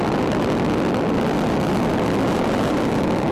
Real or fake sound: real